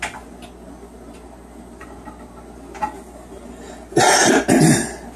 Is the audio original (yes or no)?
yes